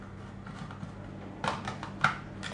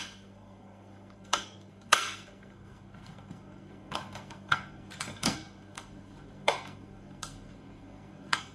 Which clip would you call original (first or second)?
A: first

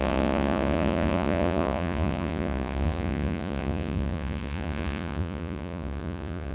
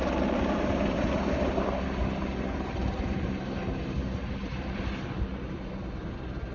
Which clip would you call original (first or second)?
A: second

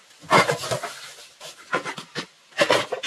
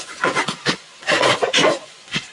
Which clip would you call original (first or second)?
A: first